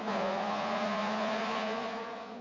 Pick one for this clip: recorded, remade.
remade